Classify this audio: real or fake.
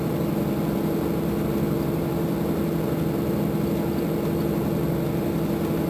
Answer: real